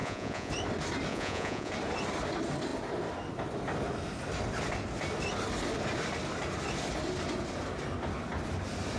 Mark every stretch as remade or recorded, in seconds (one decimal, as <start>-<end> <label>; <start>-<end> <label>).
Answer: 0.0-0.5 remade; 0.5-1.1 recorded; 1.1-1.7 remade; 1.7-9.0 recorded

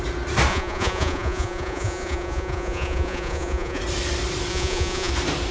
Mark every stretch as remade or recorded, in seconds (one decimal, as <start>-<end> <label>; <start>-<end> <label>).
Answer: 0.0-0.5 recorded; 0.5-3.8 remade; 3.8-4.5 recorded; 4.5-5.1 remade; 5.1-5.5 recorded

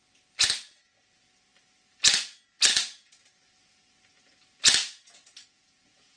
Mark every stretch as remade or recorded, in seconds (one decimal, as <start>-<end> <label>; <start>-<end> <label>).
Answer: 0.0-4.8 recorded; 4.8-6.2 remade

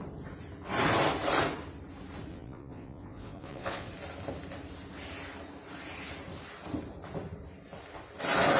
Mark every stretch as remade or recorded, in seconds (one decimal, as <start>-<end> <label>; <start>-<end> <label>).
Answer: 0.0-2.3 recorded; 2.3-3.9 remade; 3.9-8.6 recorded

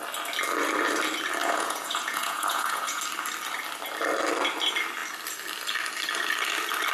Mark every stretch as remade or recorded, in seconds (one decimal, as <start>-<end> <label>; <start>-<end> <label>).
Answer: 0.0-1.4 recorded; 1.4-3.0 remade; 3.0-6.9 recorded

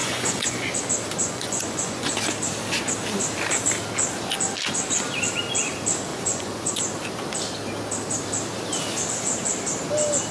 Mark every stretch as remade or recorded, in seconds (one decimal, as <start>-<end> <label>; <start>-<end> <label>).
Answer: 0.0-0.7 remade; 0.7-1.2 recorded; 1.2-2.1 remade; 2.1-6.1 recorded; 6.1-6.7 remade; 6.7-10.3 recorded

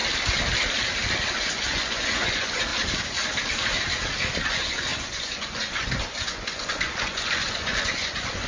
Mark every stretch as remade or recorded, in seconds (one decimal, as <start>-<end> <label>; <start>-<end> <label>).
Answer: 0.0-1.4 recorded; 1.4-2.7 remade; 2.7-4.5 recorded; 4.5-8.5 remade

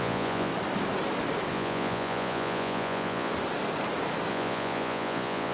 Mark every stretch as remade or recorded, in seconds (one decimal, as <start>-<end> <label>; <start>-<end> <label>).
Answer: 0.0-0.5 remade; 0.5-1.5 recorded; 1.5-3.3 remade; 3.3-4.3 recorded; 4.3-5.5 remade